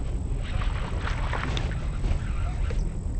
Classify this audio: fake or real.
real